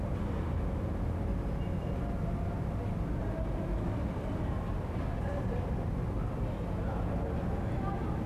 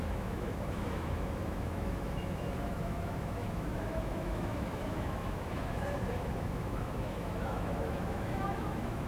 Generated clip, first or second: second